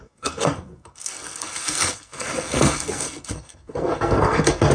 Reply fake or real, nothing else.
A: fake